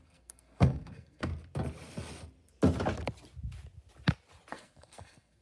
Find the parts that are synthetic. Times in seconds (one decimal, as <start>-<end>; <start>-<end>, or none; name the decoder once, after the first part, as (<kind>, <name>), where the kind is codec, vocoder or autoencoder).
0.0-1.3 (codec, SNAC); 4.5-5.4